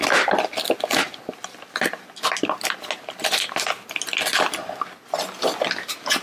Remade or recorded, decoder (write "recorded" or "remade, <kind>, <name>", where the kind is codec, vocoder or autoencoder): recorded